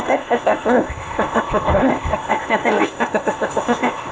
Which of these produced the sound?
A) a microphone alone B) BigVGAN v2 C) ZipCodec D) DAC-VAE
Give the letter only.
C